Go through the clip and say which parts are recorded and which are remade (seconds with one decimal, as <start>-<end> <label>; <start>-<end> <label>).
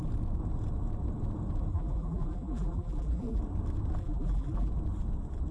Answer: 0.0-1.7 recorded; 1.7-3.4 remade; 3.4-4.0 recorded; 4.0-4.7 remade; 4.7-5.5 recorded